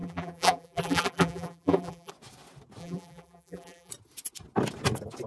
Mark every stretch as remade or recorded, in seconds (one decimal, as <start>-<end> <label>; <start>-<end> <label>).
0.0-2.1 remade; 2.1-2.8 recorded; 2.8-3.9 remade; 3.9-5.3 recorded